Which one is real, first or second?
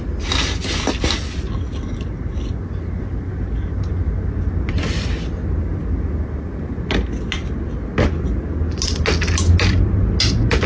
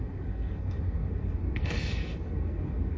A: first